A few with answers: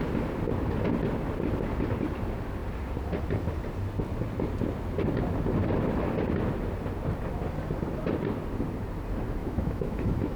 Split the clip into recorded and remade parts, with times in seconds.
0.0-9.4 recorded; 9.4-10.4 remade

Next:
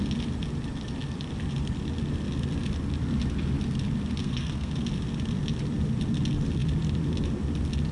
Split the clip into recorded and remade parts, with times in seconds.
0.0-4.2 recorded; 4.2-4.7 remade; 4.7-7.9 recorded

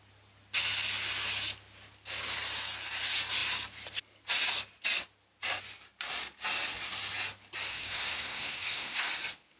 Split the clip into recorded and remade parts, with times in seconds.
0.0-7.7 recorded; 7.7-9.1 remade; 9.1-9.6 recorded

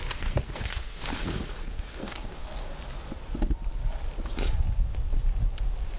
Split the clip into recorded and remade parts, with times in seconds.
0.0-2.4 remade; 2.4-6.0 recorded

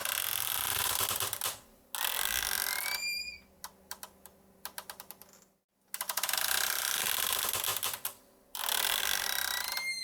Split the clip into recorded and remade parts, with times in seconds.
0.0-10.0 recorded